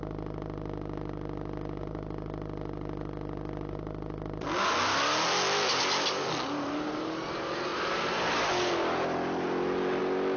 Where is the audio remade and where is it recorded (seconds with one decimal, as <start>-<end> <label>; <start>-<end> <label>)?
0.0-7.7 recorded; 7.7-10.0 remade; 10.0-10.4 recorded